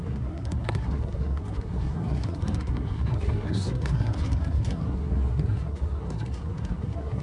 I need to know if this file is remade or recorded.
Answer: remade